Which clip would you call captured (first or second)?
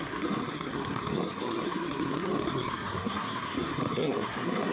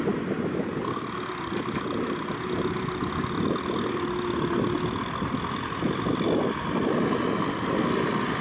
second